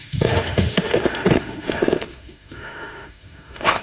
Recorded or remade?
remade